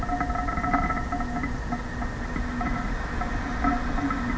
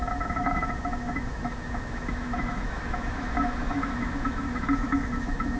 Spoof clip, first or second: second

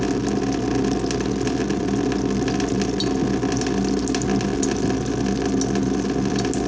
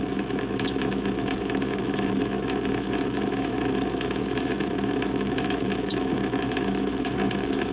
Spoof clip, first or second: second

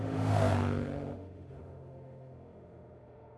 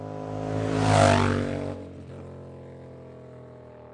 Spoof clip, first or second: first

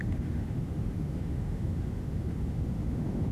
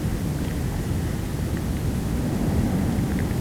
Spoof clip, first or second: first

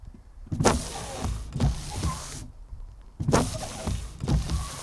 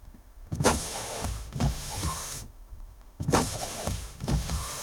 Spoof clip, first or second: second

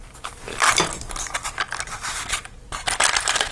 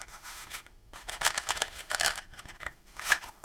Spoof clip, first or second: second